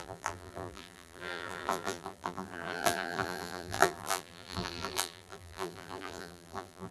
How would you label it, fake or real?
fake